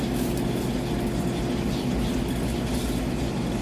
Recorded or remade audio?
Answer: recorded